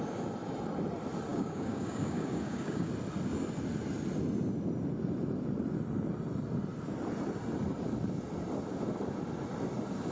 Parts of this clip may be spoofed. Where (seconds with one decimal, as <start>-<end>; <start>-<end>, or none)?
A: 1.3-2.9